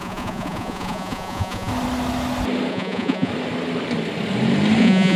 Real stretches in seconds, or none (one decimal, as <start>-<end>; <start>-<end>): 1.7-2.7; 3.3-4.8